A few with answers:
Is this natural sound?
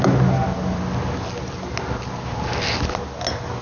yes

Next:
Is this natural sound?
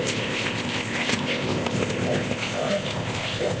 no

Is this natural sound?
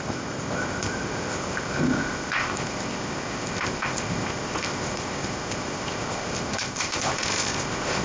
no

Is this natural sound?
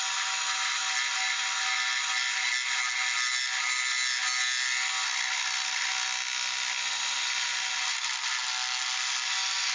yes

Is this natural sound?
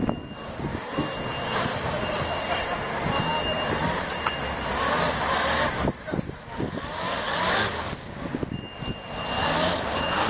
yes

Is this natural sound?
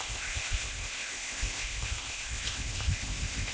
no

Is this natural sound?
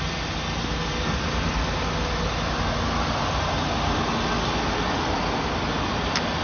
yes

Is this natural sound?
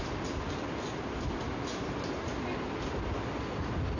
yes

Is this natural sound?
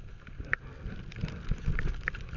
yes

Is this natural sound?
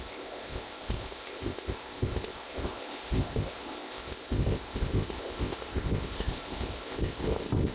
no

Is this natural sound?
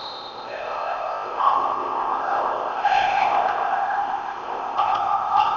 no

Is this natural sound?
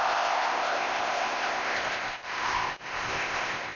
no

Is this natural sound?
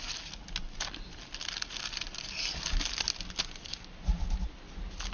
yes